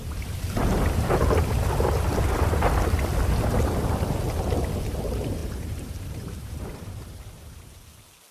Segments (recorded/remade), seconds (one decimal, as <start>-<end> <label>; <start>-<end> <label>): 0.0-5.4 recorded; 5.4-7.7 remade; 7.7-8.3 recorded